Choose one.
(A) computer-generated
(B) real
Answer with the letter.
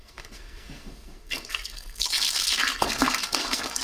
A